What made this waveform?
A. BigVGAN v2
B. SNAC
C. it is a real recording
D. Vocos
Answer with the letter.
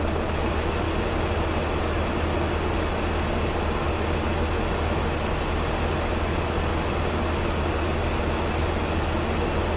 C